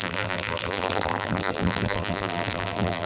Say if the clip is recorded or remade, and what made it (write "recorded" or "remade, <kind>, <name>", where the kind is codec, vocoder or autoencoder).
remade, vocoder, BigVGAN v2